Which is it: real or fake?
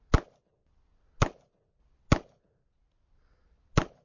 real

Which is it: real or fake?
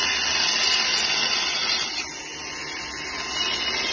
real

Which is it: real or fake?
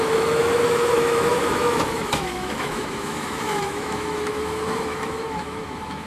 fake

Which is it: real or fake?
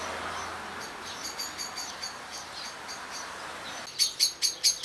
real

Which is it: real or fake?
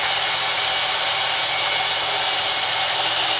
real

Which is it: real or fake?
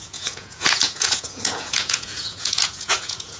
fake